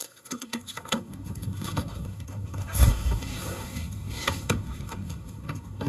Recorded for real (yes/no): no